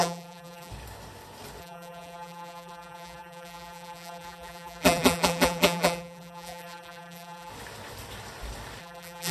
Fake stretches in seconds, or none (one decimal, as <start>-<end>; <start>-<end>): 0.0-0.7; 1.6-7.5; 8.8-9.3